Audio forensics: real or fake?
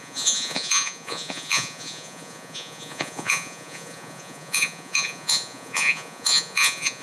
fake